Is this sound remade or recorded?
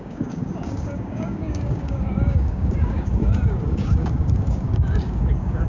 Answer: remade